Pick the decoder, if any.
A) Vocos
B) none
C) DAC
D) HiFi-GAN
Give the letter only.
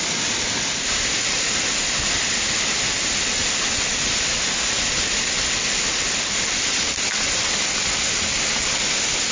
B